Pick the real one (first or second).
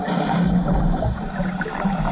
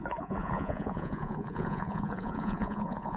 first